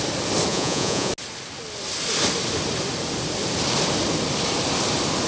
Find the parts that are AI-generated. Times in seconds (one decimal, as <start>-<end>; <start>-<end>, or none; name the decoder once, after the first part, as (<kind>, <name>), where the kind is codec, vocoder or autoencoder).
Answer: 0.5-1.1 (vocoder, Vocos)